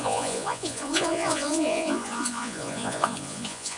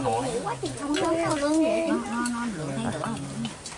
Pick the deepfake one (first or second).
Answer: first